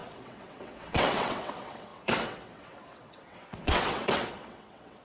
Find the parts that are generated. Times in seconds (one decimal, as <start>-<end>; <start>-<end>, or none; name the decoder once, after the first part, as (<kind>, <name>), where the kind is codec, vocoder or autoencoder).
0.0-5.0 (vocoder, WaveNeXt)